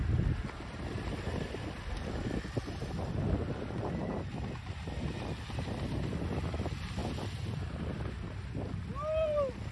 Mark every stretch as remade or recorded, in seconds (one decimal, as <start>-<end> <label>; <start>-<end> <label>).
0.0-9.7 recorded